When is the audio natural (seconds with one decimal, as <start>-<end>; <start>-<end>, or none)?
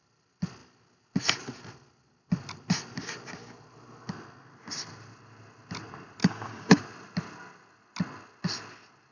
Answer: 0.0-6.2; 6.8-9.1